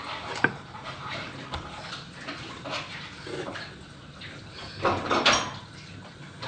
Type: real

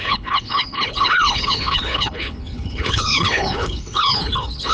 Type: fake